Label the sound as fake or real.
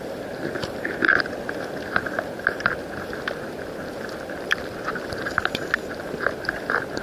fake